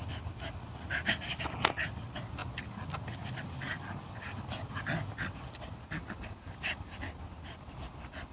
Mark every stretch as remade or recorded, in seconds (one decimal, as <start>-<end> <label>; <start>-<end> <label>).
0.0-8.3 recorded